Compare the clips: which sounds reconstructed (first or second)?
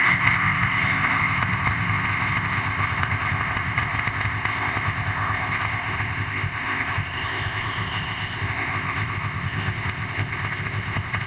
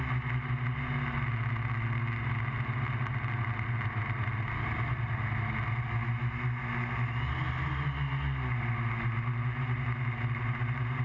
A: first